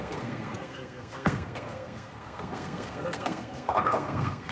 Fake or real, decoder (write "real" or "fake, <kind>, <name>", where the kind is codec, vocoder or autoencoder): fake, codec, SNAC